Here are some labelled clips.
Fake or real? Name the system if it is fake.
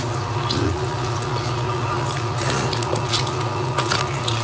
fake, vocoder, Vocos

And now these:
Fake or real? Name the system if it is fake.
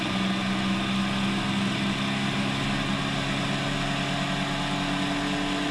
real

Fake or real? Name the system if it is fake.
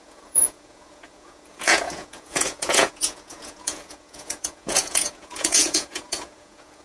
fake, vocoder, Vocos